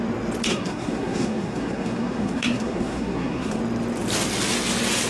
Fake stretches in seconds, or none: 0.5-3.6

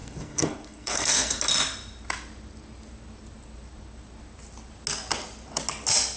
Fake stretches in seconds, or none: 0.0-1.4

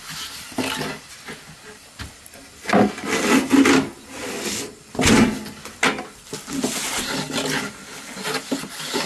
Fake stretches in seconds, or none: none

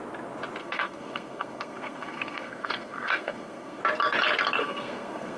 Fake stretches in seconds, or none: 0.6-3.8; 4.6-5.4